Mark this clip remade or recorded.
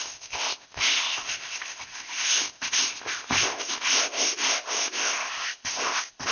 remade